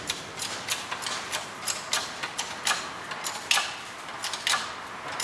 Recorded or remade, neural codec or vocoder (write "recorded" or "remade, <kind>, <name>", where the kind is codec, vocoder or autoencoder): recorded